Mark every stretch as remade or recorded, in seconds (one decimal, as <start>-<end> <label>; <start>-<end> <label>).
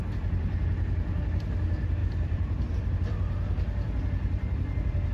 0.0-2.0 recorded; 2.0-2.7 remade; 2.7-5.1 recorded